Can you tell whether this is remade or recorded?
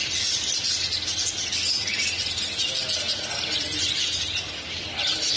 recorded